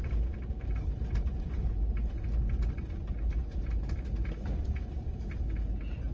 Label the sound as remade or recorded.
recorded